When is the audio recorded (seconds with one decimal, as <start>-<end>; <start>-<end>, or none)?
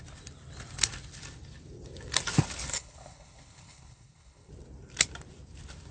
0.0-2.7; 4.5-5.9